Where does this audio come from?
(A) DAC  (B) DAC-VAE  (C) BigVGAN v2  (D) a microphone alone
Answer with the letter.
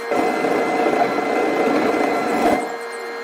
D